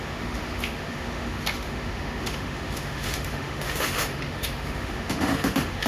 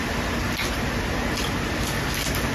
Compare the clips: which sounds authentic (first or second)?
second